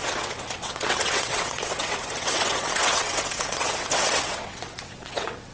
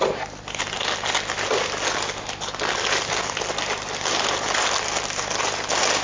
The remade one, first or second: first